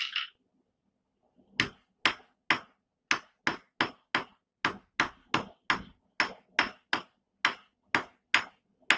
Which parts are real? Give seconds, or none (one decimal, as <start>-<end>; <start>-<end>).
0.0-9.0